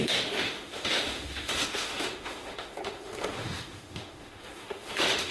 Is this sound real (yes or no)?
no